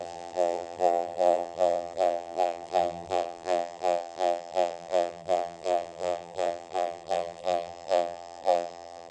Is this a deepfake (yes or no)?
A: yes